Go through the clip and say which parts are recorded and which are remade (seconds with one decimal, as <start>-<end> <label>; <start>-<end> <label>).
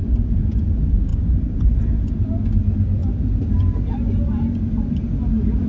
0.0-1.1 recorded; 1.1-1.7 remade; 1.7-3.0 recorded; 3.0-5.1 remade; 5.1-5.7 recorded